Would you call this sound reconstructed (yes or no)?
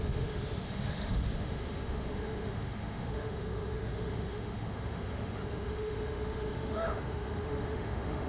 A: yes